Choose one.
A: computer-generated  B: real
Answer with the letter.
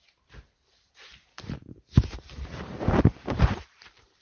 A